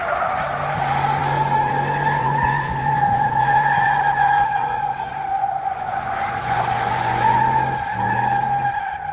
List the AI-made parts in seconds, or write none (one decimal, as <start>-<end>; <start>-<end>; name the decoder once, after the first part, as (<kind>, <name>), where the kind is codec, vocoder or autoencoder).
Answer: 2.2-7.4 (vocoder, Vocos)